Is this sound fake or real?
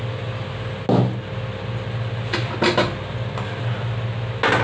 real